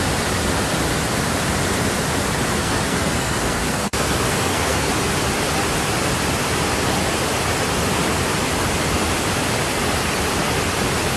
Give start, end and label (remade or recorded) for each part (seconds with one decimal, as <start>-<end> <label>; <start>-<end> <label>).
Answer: 0.0-2.6 recorded; 2.6-4.9 remade; 4.9-11.2 recorded